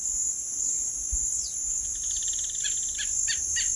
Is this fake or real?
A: real